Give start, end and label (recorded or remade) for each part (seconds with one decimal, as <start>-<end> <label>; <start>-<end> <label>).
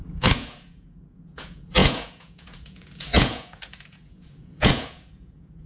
0.0-5.7 remade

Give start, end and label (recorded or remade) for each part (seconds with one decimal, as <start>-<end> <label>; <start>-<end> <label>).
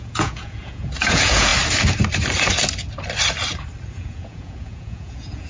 0.0-1.5 remade; 1.5-3.9 recorded; 3.9-5.5 remade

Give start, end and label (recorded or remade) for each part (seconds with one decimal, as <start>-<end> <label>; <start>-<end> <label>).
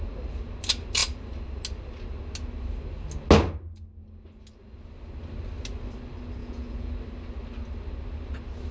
0.0-6.4 recorded; 6.4-6.9 remade; 6.9-8.7 recorded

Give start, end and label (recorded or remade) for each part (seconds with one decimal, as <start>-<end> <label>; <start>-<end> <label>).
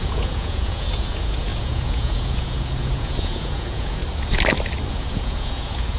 0.0-4.0 remade; 4.0-4.9 recorded; 4.9-6.0 remade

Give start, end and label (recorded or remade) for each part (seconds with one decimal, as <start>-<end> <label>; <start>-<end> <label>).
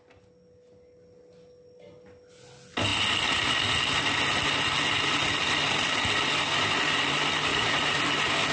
0.0-7.5 recorded; 7.5-8.0 remade; 8.0-8.5 recorded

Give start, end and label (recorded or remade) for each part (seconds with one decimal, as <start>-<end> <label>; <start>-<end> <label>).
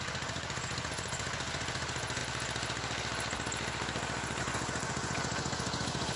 0.0-2.2 remade; 2.2-4.4 recorded; 4.4-6.2 remade